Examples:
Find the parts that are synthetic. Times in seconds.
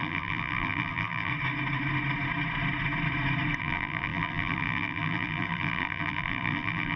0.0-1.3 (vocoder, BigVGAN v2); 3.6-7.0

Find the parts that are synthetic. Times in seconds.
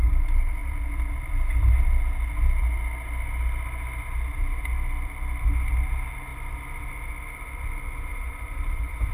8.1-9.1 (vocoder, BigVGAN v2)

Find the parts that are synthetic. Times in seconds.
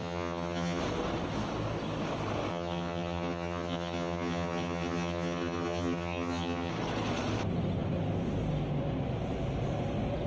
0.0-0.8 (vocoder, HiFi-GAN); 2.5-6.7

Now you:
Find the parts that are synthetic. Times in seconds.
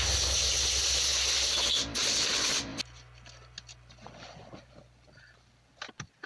none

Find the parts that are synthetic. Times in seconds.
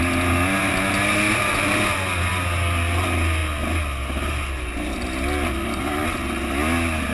none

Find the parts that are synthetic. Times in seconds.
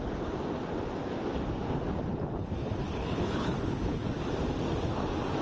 2.1-4.0 (codec, HILCodec)